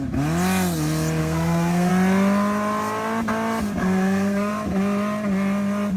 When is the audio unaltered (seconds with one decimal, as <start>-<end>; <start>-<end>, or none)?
0.0-1.2; 1.9-3.8; 4.5-6.0